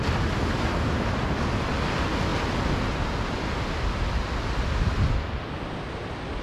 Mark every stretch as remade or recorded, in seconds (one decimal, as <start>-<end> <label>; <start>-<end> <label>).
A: 0.0-6.4 recorded